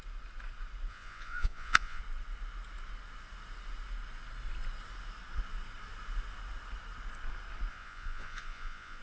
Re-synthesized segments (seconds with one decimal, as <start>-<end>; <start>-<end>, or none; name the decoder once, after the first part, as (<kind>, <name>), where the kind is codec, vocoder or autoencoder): 0.9-2.0 (vocoder, Vocos); 7.7-9.0